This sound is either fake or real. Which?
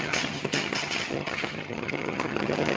fake